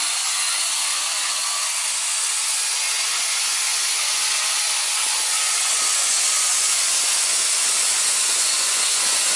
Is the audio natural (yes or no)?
no